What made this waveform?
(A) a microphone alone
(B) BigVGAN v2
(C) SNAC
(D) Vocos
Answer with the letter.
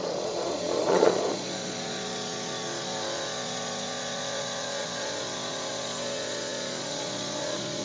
D